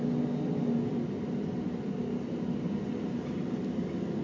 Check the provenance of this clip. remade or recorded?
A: recorded